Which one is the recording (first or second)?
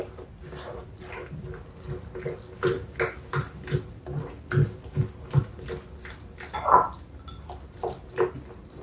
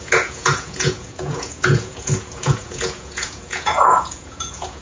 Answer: first